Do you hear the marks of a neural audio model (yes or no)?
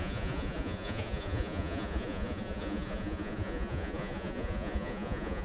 yes